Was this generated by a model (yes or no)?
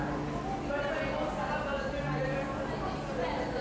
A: no